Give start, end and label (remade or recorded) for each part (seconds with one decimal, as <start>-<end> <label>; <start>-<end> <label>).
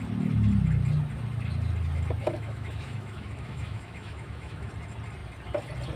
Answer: 0.0-2.2 recorded; 2.2-4.7 remade; 4.7-6.0 recorded